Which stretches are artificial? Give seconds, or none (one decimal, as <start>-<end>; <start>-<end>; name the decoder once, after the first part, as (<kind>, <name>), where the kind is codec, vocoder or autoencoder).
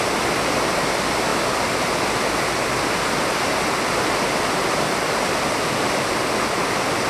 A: none